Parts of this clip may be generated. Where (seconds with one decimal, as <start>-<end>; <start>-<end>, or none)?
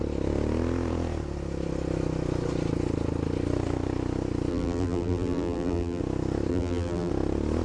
4.5-6.0; 6.5-7.1